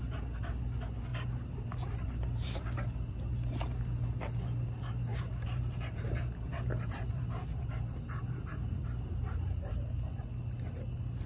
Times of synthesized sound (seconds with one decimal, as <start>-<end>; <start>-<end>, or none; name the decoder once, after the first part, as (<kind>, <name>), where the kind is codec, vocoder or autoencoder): 1.1-2.6 (vocoder, BigVGAN v2); 5.1-10.2